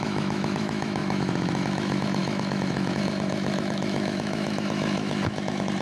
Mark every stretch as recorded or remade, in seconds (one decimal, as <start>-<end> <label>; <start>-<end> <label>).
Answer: 0.0-5.8 remade